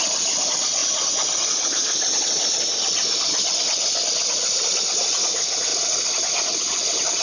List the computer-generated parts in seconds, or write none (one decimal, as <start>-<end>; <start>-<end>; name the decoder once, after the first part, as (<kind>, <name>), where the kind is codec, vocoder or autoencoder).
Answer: none